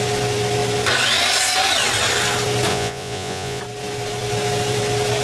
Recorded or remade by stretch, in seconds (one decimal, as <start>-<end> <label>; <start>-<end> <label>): 0.0-2.7 recorded; 2.7-3.6 remade; 3.6-5.2 recorded